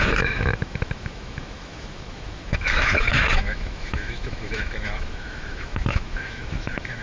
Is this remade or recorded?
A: remade